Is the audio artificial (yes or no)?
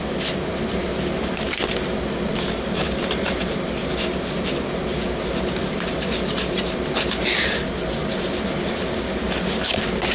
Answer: yes